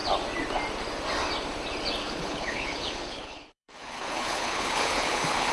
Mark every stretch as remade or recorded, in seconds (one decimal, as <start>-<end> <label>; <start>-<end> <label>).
0.0-2.0 recorded; 2.0-5.5 remade